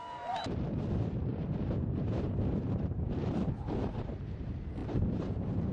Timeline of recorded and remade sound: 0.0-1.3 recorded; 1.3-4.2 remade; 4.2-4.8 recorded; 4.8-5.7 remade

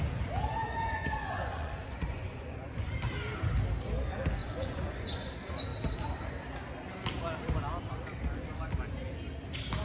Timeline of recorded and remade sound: 0.0-0.6 recorded; 0.6-2.9 remade; 2.9-4.4 recorded; 4.4-5.3 remade; 5.3-9.8 recorded

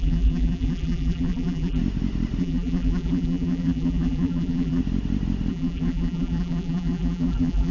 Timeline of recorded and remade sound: 0.0-1.8 remade; 1.8-2.4 recorded; 2.4-4.8 remade; 4.8-5.5 recorded; 5.5-7.7 remade

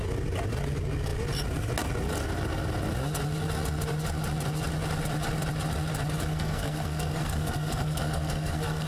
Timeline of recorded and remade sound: 0.0-6.3 recorded; 6.3-8.9 remade

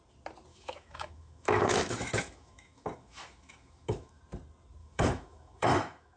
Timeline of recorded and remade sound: 0.0-0.5 recorded; 0.5-4.2 remade; 4.2-4.8 recorded; 4.8-6.2 remade

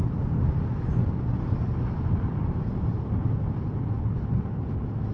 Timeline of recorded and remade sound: 0.0-5.1 recorded

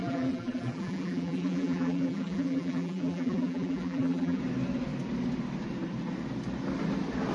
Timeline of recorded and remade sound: 0.0-4.4 remade; 4.4-7.3 recorded